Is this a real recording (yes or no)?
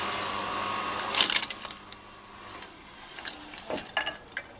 yes